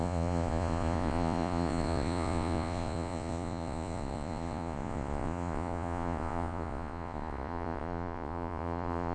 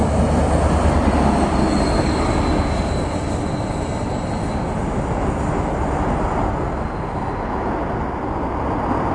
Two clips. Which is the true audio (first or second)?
second